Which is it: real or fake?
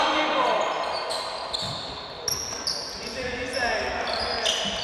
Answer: real